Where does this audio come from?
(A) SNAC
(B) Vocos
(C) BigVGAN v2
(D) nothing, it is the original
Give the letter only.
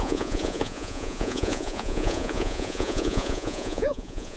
B